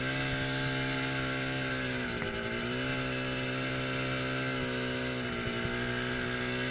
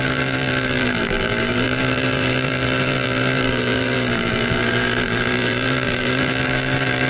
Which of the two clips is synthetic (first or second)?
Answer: second